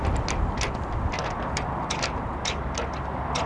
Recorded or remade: recorded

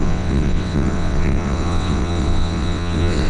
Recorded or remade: remade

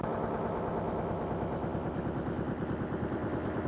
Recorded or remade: recorded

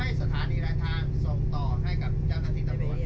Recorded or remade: recorded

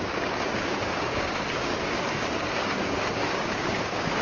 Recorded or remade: remade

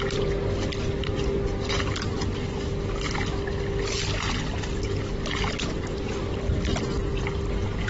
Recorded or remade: recorded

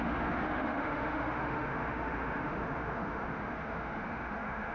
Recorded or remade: remade